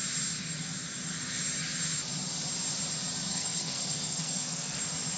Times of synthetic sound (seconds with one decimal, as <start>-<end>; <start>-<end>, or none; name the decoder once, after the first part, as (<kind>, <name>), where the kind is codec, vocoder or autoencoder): 3.3-4.8 (codec, SNAC)